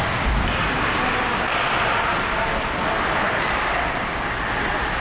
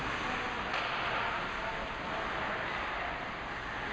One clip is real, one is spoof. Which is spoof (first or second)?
first